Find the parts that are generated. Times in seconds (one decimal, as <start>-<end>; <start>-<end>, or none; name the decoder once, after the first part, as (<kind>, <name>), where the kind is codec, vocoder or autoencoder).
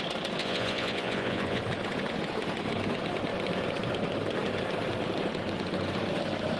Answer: 0.4-1.6 (vocoder, Vocos)